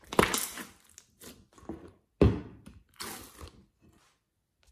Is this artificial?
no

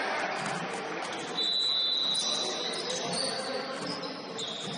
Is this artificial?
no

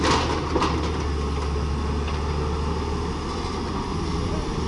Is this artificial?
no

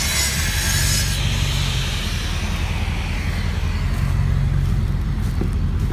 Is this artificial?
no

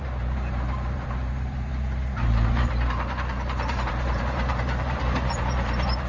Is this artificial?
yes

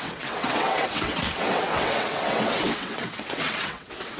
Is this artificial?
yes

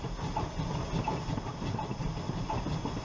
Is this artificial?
no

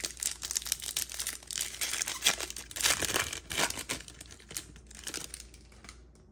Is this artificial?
no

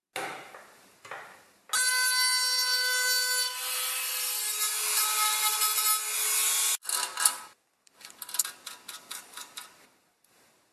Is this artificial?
no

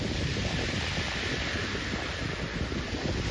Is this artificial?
no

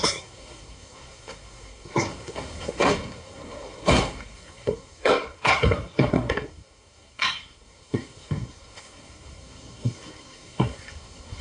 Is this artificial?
yes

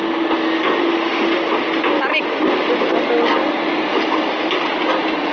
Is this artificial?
no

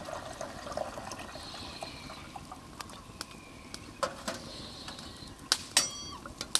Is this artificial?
no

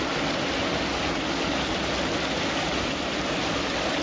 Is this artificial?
no